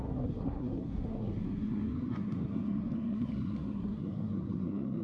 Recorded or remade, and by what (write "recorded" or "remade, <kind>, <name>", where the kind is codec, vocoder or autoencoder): remade, codec, SNAC